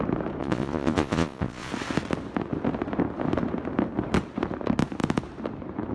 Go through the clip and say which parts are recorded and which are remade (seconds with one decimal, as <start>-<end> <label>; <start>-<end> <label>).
0.0-0.4 recorded; 0.4-1.7 remade; 1.7-5.9 recorded